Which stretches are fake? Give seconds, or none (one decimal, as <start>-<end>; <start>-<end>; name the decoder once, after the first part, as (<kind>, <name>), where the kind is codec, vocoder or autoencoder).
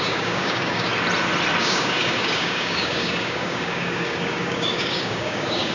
0.0-0.9 (codec, DAC); 1.6-5.7